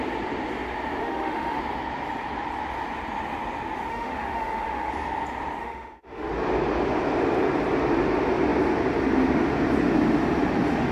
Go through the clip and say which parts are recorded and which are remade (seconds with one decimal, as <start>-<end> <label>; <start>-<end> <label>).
0.0-1.0 recorded; 1.0-1.6 remade; 1.6-3.9 recorded; 3.9-4.9 remade; 4.9-5.6 recorded; 5.6-6.3 remade; 6.3-10.9 recorded

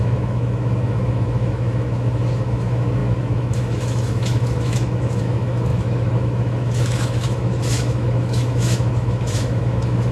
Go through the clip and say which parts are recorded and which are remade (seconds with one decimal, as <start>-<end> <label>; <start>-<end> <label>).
0.0-10.1 remade